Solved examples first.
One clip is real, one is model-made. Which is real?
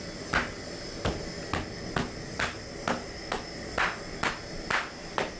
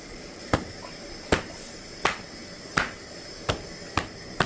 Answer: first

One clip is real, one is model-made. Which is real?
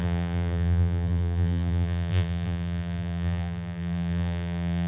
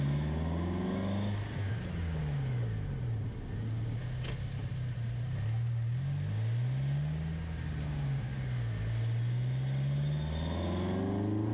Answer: second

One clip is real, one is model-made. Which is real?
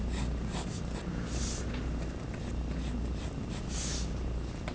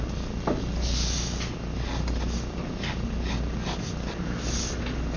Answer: second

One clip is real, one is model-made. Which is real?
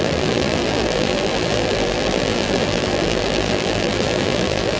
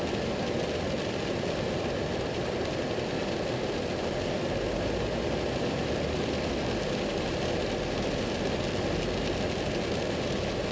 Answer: second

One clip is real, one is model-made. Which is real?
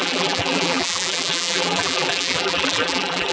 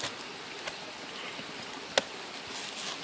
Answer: second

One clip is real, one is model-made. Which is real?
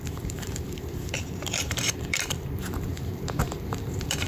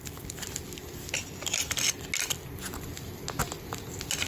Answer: second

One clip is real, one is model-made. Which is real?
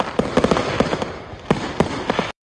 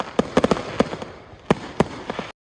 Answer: second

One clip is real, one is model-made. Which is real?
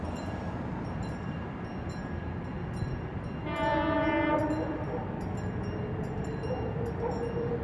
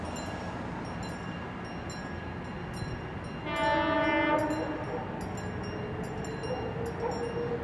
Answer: second